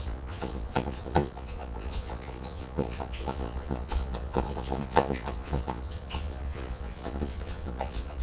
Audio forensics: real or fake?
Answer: fake